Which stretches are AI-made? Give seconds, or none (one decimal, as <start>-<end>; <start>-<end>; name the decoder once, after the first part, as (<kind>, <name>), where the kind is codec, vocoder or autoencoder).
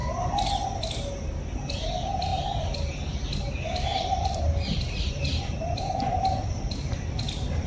0.0-0.5 (vocoder, BigVGAN v2); 2.3-2.9; 3.9-6.7